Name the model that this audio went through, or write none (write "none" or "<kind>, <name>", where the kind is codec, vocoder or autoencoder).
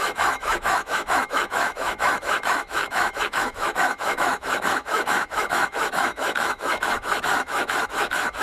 autoencoder, DAC-VAE